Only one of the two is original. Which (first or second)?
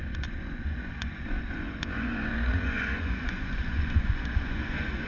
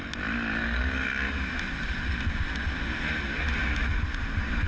second